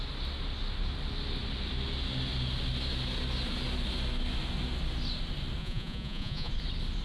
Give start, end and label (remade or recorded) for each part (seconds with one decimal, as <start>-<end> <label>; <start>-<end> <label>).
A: 0.0-5.6 recorded; 5.6-6.5 remade; 6.5-7.0 recorded